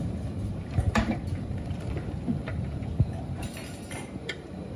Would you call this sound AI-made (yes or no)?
yes